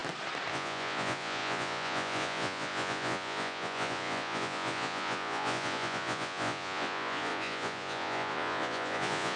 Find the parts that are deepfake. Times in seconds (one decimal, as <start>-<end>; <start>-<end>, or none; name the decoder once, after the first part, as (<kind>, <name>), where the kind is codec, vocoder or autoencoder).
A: 0.5-9.4 (vocoder, Vocos)